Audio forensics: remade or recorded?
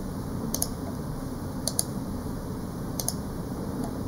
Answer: remade